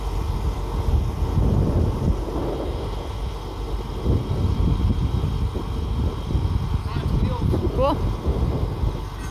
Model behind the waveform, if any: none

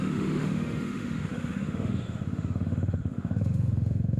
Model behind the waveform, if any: autoencoder, DAC-VAE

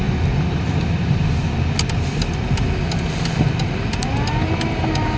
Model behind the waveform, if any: none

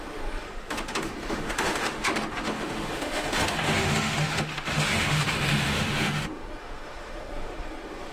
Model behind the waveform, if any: autoencoder, DAC-VAE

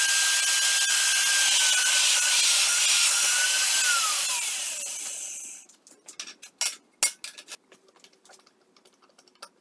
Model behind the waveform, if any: none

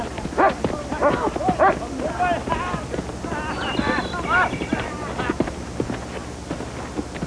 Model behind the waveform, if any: none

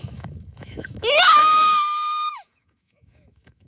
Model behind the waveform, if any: autoencoder, DAC-VAE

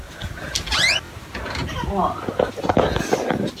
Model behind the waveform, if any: none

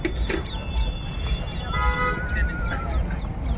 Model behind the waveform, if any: none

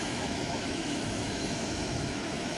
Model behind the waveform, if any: autoencoder, DAC-VAE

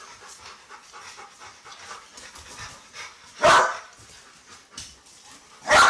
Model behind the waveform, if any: none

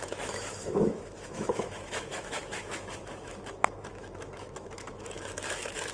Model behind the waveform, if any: autoencoder, DAC-VAE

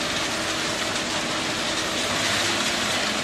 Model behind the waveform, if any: none